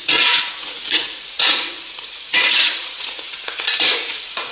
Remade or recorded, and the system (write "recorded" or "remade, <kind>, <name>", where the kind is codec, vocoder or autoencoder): remade, vocoder, Vocos